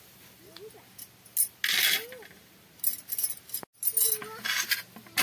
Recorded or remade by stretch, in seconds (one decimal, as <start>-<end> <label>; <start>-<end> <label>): 0.0-5.2 recorded